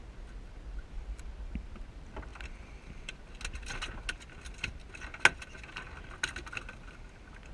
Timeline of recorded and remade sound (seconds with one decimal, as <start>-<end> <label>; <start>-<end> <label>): 0.0-7.5 recorded